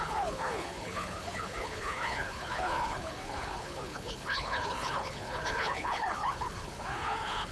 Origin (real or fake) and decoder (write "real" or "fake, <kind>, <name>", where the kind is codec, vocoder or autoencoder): fake, codec, HILCodec